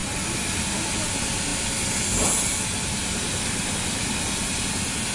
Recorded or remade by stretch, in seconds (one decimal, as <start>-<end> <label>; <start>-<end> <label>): 0.0-5.1 recorded